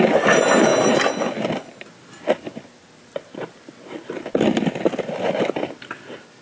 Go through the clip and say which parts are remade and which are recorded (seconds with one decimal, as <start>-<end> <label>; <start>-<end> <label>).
0.0-6.4 recorded